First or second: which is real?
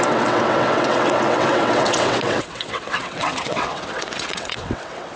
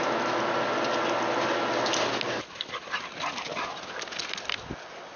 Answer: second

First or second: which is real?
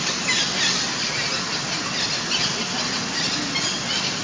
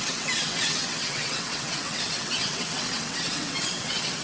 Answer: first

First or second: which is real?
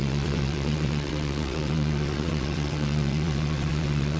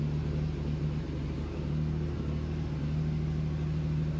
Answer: second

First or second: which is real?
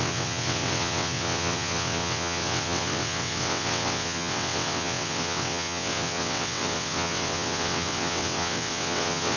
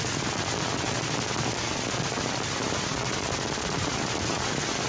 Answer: second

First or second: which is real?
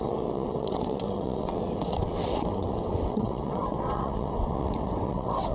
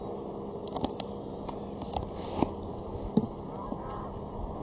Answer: second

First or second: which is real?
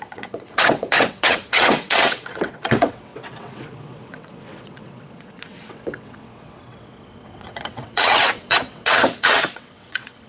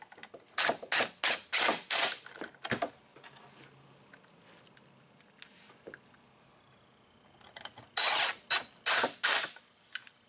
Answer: second